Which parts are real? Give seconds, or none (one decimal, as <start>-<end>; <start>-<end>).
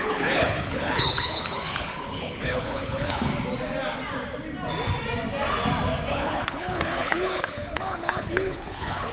3.3-6.1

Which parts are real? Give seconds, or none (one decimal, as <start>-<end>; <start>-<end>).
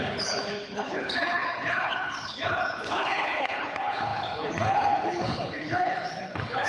none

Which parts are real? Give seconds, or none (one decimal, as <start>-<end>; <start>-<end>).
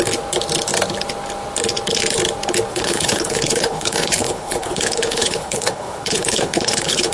0.0-2.7